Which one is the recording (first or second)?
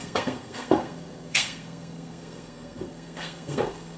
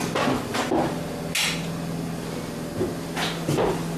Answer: second